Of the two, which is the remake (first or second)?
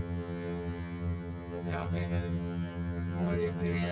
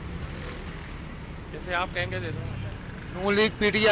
first